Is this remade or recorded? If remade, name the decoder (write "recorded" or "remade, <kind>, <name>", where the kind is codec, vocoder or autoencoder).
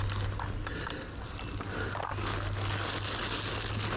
recorded